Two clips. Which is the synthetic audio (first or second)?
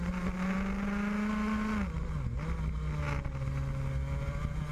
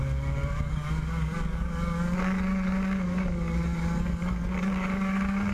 second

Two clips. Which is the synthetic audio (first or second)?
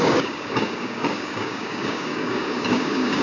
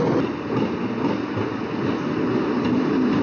first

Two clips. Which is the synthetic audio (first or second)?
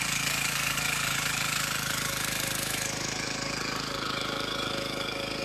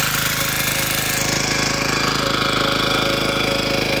first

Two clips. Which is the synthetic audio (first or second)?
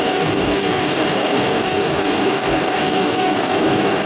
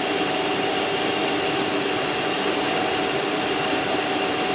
first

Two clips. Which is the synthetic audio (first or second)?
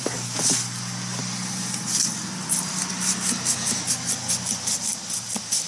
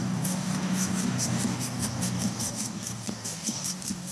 second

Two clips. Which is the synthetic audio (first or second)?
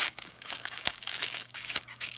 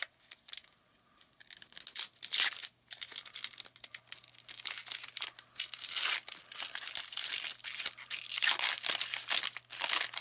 first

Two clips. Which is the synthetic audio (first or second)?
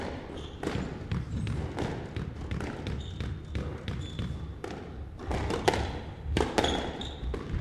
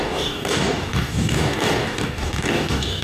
second